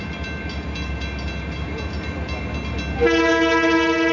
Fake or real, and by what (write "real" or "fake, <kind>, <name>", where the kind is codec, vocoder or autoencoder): real